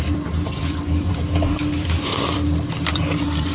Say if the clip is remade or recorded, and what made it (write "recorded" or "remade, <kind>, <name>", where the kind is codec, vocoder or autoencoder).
remade, vocoder, BigVGAN v2